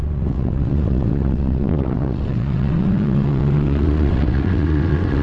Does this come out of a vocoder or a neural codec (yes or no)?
yes